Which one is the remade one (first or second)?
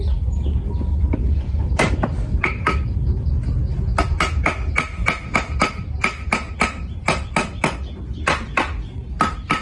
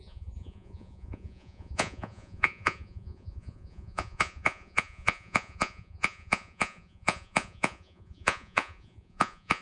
second